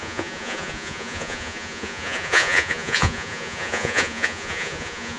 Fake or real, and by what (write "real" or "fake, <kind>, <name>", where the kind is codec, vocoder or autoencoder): fake, vocoder, Vocos